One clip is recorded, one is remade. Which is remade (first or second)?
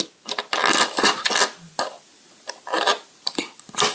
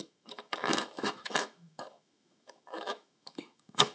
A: second